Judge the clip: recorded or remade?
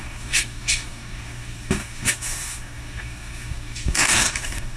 remade